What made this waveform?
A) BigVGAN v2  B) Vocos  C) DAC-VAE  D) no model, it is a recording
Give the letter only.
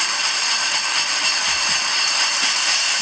A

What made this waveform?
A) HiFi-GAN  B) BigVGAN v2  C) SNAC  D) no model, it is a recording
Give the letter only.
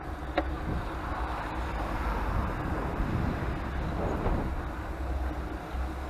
D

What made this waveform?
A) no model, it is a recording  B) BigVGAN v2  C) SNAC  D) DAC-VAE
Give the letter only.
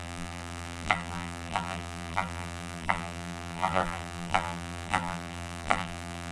B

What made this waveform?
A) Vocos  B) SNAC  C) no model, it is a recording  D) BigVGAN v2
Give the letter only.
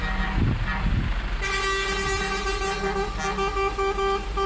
C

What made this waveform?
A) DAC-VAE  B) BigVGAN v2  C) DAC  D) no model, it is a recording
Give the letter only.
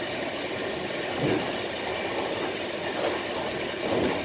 D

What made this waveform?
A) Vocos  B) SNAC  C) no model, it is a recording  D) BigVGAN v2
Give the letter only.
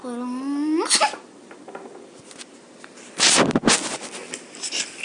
C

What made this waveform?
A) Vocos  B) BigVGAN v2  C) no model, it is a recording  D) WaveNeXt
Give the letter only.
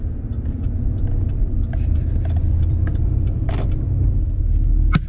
C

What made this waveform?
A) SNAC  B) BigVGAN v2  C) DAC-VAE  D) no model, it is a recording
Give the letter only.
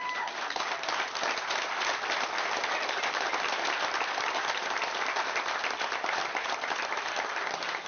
B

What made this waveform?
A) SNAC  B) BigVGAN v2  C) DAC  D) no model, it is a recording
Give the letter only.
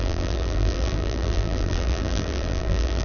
B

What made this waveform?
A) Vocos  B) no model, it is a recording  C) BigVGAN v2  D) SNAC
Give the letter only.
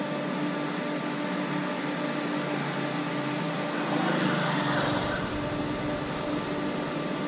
B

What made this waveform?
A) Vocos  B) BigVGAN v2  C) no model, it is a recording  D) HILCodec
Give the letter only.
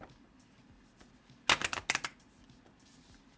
C